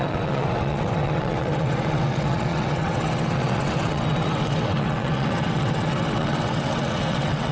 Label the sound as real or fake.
fake